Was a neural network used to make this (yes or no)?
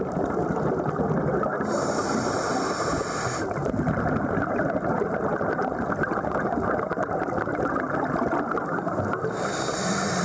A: no